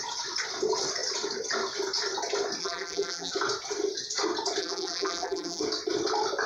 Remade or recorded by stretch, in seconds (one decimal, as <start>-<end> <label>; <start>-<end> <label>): 0.0-2.6 recorded; 2.6-3.3 remade; 3.3-4.6 recorded; 4.6-5.6 remade; 5.6-6.5 recorded